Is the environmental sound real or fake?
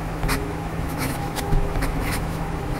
fake